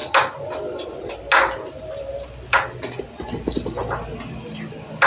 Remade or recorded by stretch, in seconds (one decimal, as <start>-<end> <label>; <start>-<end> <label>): 0.0-5.1 recorded